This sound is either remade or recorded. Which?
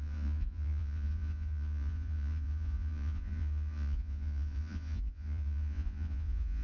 remade